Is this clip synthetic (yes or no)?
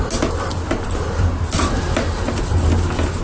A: no